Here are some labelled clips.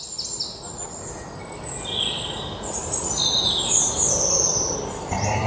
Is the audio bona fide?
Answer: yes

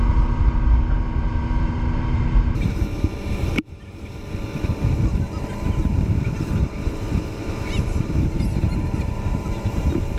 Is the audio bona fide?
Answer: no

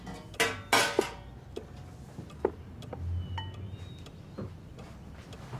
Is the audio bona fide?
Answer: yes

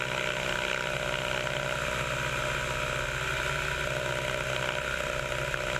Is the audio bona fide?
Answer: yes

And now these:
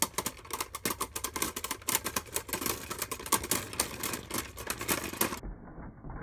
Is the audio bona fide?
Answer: yes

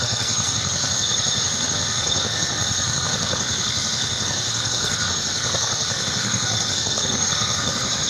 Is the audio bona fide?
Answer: no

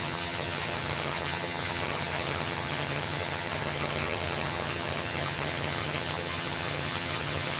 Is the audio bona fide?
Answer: no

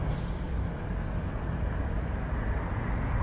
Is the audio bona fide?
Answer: yes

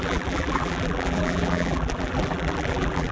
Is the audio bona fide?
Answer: no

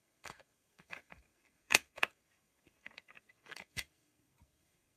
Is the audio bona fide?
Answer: no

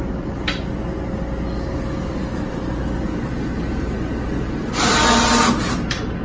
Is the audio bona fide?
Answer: yes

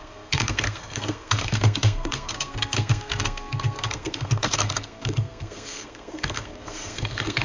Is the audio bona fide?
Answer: no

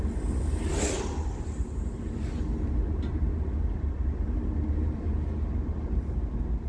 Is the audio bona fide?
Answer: yes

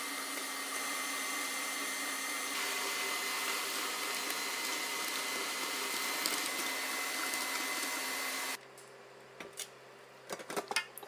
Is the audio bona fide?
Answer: yes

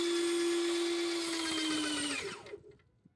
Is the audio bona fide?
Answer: yes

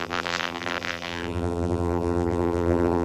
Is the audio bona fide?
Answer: no